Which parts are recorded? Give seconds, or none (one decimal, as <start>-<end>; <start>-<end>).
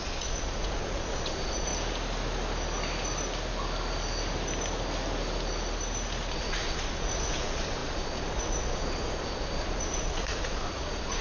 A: 1.7-6.3